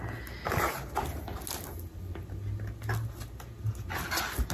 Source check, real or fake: real